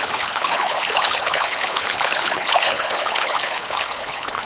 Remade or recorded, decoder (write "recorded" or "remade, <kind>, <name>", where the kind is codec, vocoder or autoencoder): remade, codec, HILCodec